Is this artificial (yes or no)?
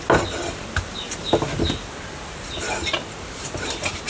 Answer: no